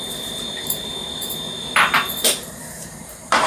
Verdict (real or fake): fake